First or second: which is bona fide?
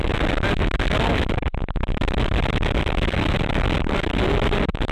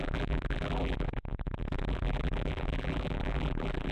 first